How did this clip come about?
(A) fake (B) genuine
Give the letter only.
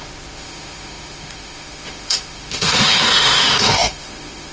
A